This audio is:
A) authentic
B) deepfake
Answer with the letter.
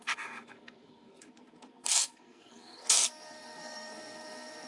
B